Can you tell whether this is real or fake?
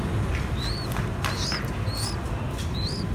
real